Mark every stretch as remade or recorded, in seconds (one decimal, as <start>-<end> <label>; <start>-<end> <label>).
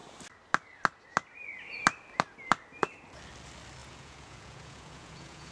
0.0-3.8 recorded; 3.8-5.5 remade